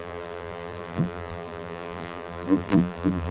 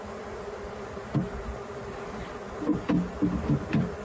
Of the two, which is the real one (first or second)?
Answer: second